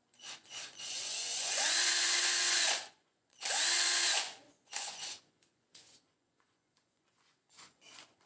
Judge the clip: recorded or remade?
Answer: remade